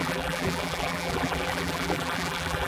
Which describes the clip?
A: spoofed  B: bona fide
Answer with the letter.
A